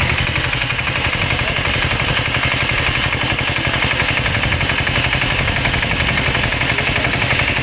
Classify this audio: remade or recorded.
recorded